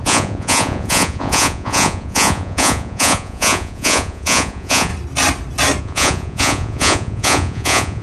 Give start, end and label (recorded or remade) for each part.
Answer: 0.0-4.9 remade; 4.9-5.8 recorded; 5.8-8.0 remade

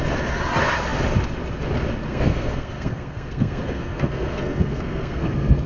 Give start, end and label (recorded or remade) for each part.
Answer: 0.0-2.1 recorded; 2.1-5.7 remade

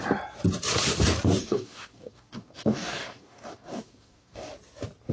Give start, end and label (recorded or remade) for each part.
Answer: 0.0-1.4 recorded; 1.4-4.5 remade; 4.5-5.1 recorded

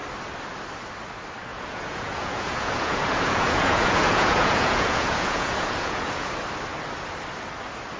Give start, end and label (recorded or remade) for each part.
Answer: 0.0-1.5 recorded; 1.5-6.3 remade; 6.3-8.0 recorded